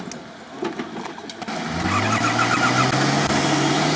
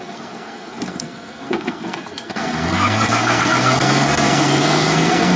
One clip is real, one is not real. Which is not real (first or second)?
second